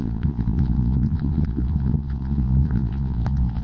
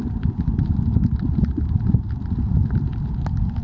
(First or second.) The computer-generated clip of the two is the first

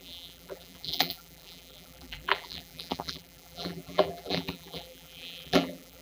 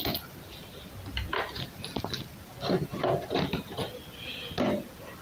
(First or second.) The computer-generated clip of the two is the first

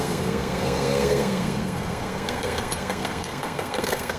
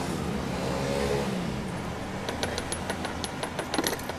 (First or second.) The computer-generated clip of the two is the first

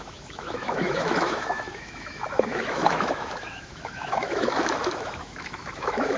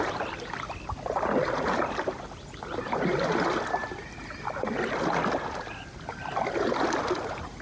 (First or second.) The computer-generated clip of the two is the first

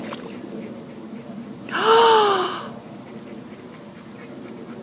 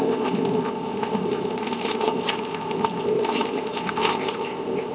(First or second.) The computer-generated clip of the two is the second